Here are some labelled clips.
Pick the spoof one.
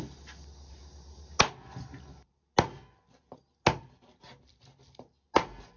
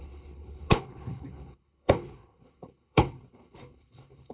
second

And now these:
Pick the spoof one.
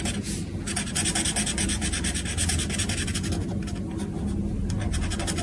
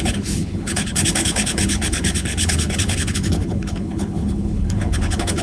second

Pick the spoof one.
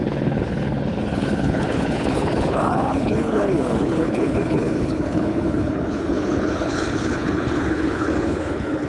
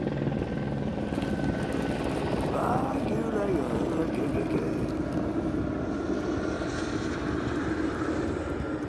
first